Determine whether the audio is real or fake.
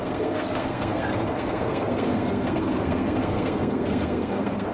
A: fake